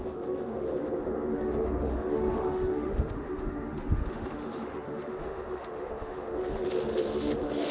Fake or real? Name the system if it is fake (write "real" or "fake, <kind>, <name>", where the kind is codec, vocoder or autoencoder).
fake, autoencoder, DAC-VAE